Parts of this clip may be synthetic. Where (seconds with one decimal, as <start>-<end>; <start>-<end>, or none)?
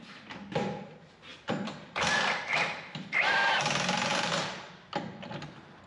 1.3-3.5